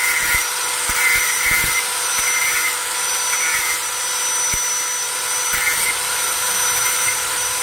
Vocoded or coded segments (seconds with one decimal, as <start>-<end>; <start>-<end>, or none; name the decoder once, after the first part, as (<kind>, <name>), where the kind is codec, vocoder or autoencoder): 0.0-2.1 (vocoder, BigVGAN v2); 5.9-7.6